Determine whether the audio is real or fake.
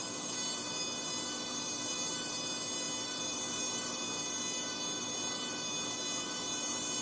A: fake